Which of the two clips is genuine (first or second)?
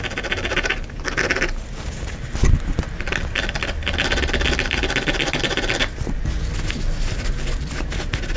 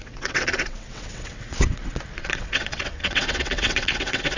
first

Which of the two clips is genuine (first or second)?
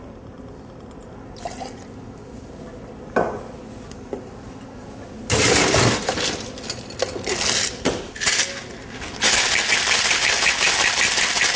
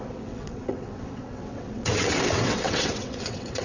first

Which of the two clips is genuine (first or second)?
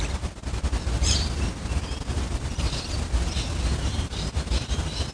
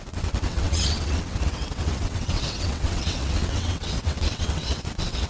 first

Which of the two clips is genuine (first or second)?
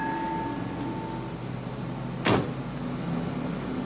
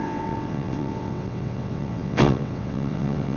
first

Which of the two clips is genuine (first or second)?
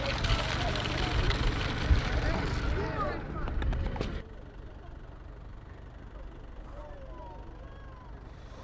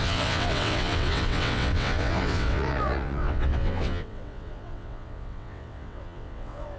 first